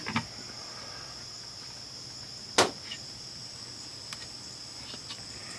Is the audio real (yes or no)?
yes